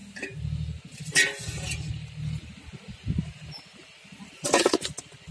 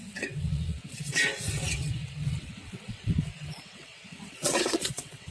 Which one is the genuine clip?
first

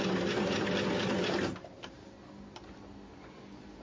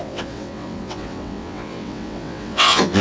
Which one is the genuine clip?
first